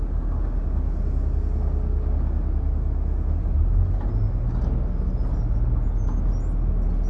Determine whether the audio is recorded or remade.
recorded